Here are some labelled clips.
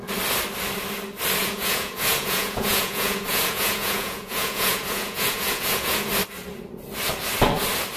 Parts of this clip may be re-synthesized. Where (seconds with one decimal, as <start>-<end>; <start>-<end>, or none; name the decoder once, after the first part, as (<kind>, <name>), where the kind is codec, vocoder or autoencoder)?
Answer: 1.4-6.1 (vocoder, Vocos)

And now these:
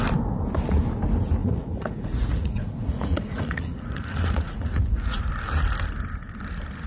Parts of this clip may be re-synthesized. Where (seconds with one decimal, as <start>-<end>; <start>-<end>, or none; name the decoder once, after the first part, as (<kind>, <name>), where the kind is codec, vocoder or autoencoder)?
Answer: 1.4-5.2 (vocoder, Vocos)

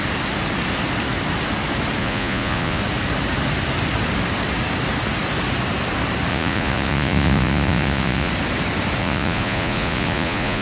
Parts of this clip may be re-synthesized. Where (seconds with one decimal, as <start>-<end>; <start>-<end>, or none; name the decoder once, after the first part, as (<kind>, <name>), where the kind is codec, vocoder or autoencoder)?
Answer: 2.0-2.8 (vocoder, Vocos); 6.3-8.3; 9.0-10.6

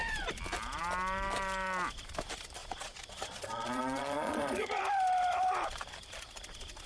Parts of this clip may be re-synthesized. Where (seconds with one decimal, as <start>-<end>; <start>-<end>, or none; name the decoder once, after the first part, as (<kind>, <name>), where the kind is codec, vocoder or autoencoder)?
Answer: 2.6-4.8 (vocoder, Vocos)

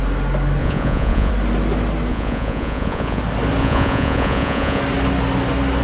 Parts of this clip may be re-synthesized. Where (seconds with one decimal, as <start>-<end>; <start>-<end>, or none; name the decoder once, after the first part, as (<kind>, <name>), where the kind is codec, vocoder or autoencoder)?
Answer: 0.6-1.3 (vocoder, Vocos); 2.1-3.2; 3.6-4.8

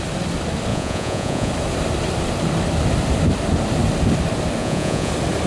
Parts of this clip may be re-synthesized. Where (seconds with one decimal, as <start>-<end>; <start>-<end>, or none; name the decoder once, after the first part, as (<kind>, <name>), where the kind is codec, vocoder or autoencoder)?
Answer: 0.7-1.5 (vocoder, Vocos); 4.6-5.1

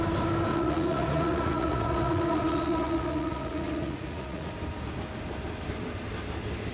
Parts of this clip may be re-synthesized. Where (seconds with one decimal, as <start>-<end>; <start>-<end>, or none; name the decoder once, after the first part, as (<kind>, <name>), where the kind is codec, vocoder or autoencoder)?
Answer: 0.5-4.5 (vocoder, Vocos)

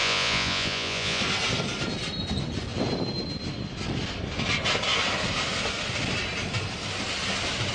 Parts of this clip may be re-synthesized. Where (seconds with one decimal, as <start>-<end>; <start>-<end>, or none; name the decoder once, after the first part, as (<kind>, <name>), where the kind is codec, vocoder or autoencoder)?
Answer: 0.0-1.2 (vocoder, Vocos)